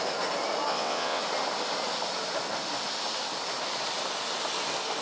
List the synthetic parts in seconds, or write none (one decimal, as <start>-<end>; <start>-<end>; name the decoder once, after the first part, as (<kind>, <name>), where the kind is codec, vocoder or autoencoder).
0.7-1.2 (vocoder, WaveNeXt)